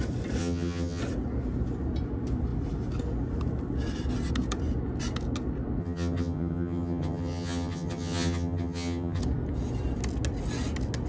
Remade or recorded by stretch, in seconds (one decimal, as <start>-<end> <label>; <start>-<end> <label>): 0.0-0.4 recorded; 0.4-1.0 remade; 1.0-5.8 recorded; 5.8-9.2 remade; 9.2-11.1 recorded